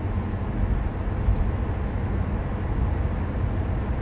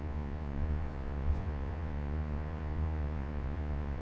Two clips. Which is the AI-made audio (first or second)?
second